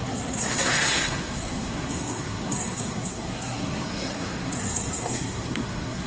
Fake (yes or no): yes